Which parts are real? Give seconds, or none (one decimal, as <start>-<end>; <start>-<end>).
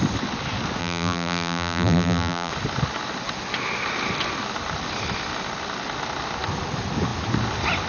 0.0-0.8; 2.5-7.9